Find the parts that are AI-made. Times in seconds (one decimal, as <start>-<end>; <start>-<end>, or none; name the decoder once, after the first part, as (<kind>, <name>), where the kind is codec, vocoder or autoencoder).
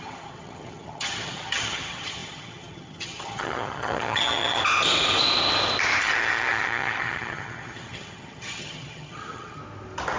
0.0-4.6 (vocoder, HiFi-GAN); 6.0-9.6